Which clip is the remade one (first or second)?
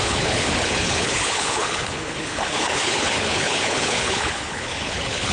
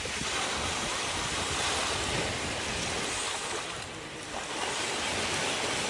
first